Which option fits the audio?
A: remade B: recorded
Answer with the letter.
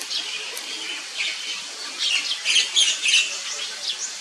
B